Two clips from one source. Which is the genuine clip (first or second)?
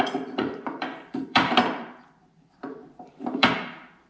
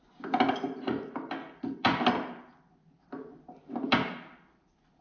second